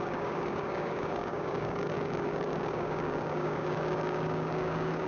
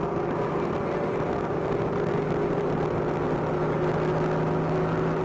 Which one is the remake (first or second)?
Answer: first